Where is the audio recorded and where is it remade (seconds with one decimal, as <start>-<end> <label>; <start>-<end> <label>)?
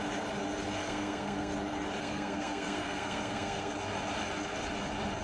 0.0-0.8 recorded; 0.8-1.5 remade; 1.5-2.0 recorded; 2.0-3.7 remade; 3.7-5.2 recorded